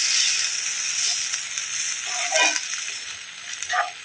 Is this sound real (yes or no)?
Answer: yes